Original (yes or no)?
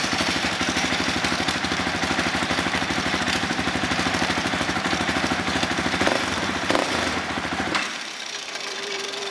no